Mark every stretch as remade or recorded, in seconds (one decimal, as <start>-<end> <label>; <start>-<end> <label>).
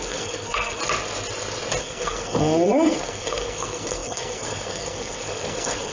0.0-0.8 remade; 0.8-1.8 recorded; 1.8-5.9 remade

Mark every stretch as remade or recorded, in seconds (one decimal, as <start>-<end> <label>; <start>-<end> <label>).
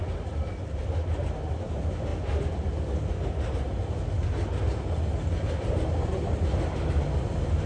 0.0-7.7 recorded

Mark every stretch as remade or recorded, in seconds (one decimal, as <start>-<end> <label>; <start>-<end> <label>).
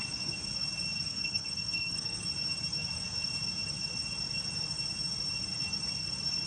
0.0-1.1 recorded; 1.1-2.2 remade; 2.2-6.5 recorded